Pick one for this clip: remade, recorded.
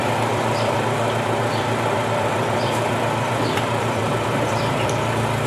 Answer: remade